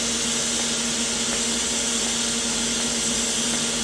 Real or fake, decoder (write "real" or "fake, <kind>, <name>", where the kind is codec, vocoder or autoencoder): real